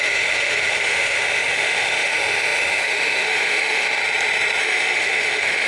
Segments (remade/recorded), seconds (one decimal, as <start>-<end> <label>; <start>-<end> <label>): 0.0-4.0 remade; 4.0-4.6 recorded; 4.6-5.7 remade